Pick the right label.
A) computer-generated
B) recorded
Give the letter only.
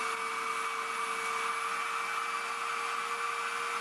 B